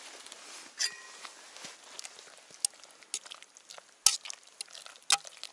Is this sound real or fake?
real